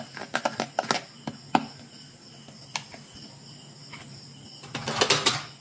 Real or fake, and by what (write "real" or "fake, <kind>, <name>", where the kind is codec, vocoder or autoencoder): real